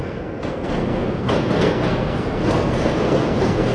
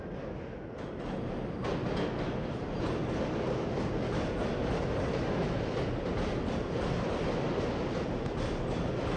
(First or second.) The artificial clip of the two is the first